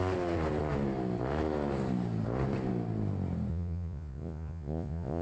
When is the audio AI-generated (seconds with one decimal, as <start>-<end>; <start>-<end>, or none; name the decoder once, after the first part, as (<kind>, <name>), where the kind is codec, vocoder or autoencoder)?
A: 3.5-5.2 (vocoder, Vocos)